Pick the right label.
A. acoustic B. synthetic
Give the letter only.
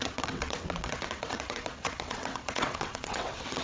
B